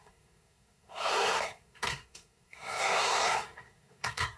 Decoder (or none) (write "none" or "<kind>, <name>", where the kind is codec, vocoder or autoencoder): codec, SNAC